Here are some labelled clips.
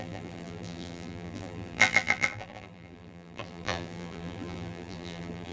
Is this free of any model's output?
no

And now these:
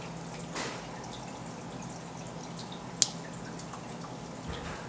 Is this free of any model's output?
yes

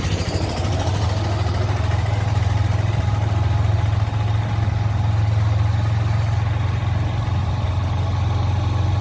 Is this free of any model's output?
yes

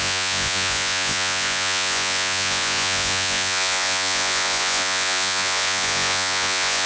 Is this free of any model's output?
no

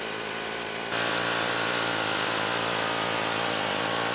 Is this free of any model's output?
yes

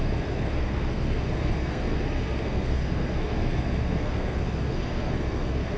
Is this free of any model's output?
no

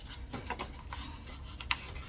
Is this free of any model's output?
yes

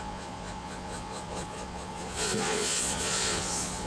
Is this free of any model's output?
no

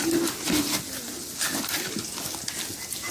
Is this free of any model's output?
yes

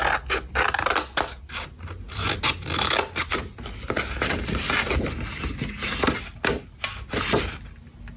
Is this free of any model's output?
yes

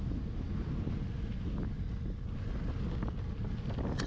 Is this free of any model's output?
yes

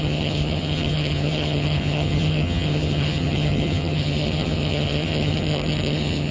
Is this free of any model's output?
no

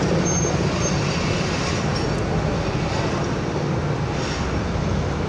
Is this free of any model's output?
yes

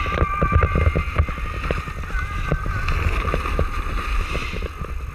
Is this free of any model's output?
yes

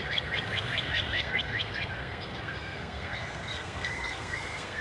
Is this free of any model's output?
no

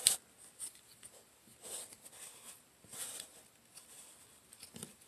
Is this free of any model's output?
yes